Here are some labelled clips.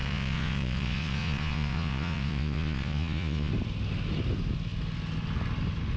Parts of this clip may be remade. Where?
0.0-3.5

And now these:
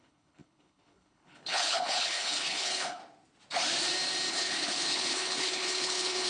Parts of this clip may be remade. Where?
0.0-3.0; 4.3-6.3

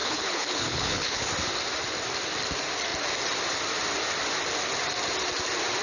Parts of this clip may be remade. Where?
0.0-1.3

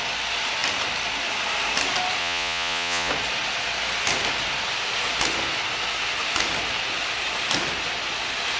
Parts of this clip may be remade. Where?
2.2-3.1

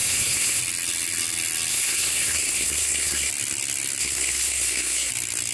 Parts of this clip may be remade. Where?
0.0-0.6; 1.7-3.3; 4.0-5.1

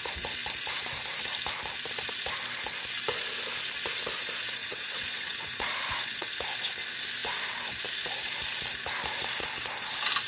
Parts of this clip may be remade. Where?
4.6-6.3

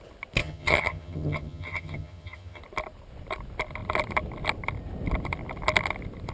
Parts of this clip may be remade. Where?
0.4-2.6